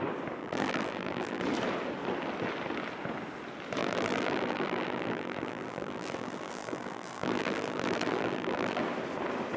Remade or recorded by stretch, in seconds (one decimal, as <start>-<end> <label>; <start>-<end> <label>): 0.0-0.4 recorded; 0.4-1.4 remade; 1.4-3.8 recorded; 3.8-8.8 remade; 8.8-9.6 recorded